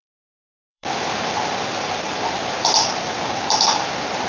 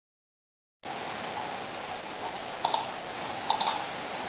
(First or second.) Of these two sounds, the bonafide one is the second